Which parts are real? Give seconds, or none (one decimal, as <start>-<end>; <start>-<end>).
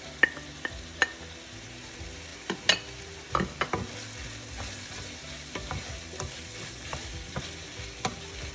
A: 0.0-8.5